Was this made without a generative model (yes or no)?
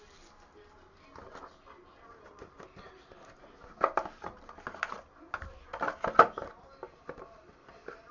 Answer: yes